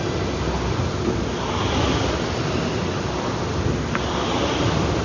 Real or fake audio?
real